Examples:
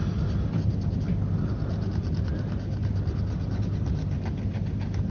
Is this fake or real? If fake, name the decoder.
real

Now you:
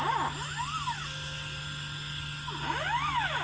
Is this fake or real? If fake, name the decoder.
real